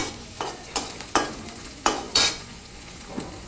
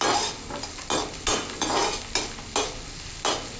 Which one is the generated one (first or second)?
first